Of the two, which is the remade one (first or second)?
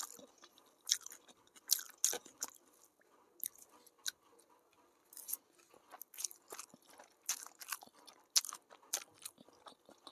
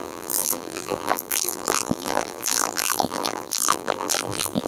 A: second